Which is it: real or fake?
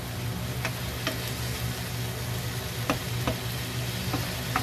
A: real